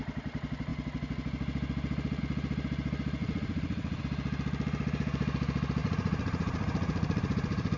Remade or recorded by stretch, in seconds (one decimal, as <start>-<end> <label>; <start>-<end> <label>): 0.0-3.2 recorded; 3.2-4.0 remade; 4.0-5.8 recorded; 5.8-7.8 remade